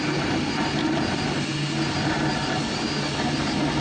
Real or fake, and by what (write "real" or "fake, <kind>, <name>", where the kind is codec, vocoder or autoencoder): real